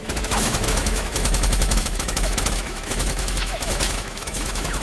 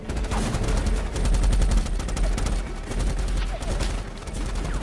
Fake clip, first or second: first